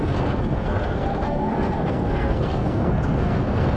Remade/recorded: remade